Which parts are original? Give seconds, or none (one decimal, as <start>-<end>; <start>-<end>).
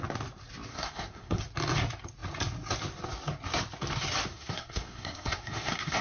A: 0.0-0.7; 1.4-4.3